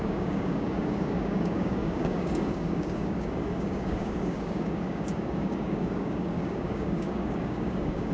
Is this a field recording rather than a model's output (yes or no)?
no